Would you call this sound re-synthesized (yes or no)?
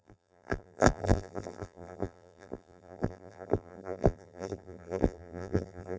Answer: yes